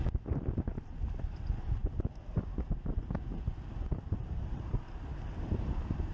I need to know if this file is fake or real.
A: real